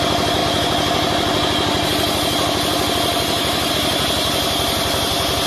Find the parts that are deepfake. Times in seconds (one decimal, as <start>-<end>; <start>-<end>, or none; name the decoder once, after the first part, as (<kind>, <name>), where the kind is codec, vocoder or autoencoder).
none